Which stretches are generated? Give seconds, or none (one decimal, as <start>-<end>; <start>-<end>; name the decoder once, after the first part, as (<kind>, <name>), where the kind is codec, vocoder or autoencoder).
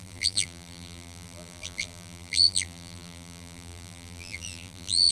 0.0-5.1 (vocoder, BigVGAN v2)